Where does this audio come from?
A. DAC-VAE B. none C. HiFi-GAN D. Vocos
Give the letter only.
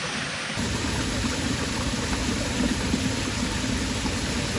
B